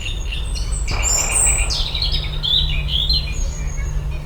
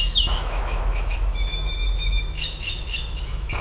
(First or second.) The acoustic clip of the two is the first